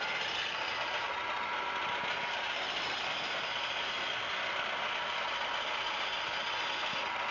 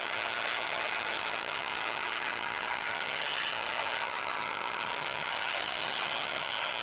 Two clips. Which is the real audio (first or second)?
first